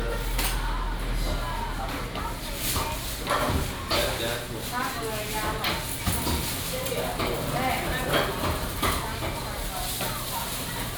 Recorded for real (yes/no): yes